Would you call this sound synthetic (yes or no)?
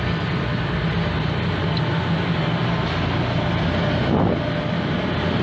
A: no